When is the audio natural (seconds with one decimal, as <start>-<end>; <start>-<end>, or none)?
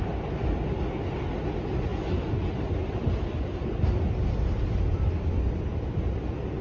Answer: 0.0-6.6